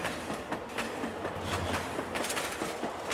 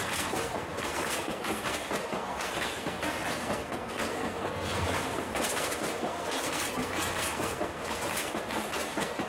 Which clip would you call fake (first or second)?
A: second